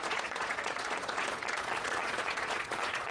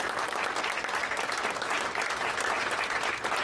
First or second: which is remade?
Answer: first